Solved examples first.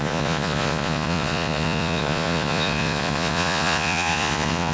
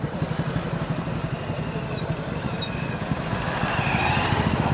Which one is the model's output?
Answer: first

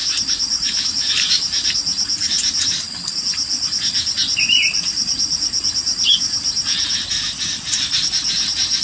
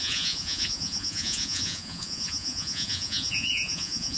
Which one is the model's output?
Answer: second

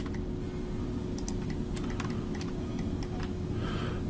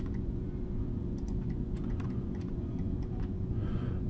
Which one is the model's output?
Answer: second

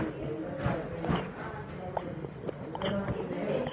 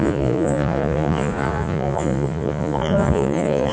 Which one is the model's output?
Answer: second